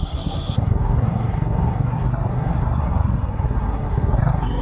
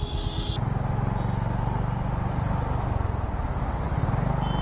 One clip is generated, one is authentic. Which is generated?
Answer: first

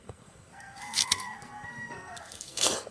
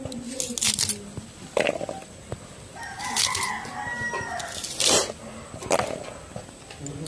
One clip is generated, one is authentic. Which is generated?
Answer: first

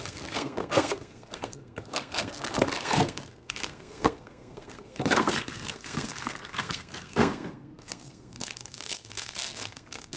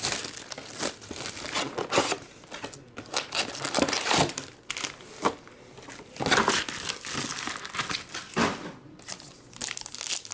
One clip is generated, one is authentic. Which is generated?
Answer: first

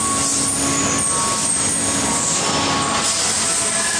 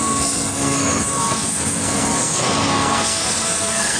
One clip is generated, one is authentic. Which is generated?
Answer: second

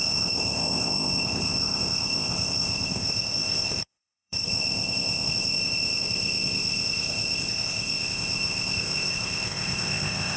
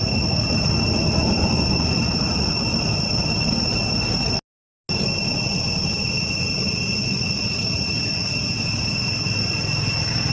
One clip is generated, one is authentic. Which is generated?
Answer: first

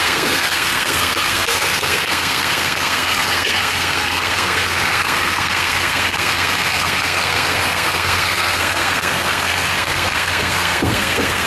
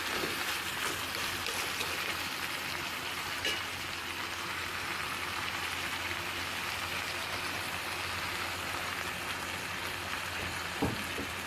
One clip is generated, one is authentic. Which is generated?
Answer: first